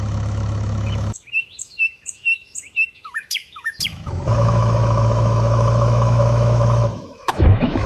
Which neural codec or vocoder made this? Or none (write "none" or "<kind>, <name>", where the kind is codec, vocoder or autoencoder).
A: autoencoder, DAC-VAE